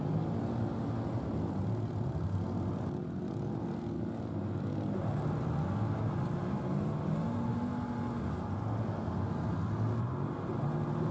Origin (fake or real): real